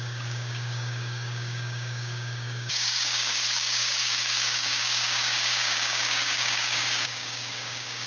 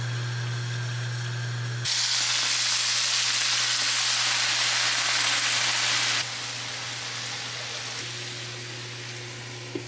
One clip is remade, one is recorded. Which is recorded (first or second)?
second